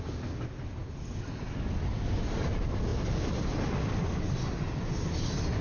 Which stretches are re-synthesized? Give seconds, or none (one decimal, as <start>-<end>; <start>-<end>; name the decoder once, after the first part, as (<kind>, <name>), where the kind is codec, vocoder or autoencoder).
none